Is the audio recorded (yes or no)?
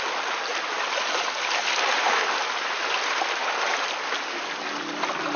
yes